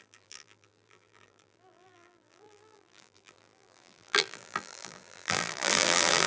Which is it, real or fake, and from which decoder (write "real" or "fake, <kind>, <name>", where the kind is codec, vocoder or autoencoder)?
fake, vocoder, BigVGAN v2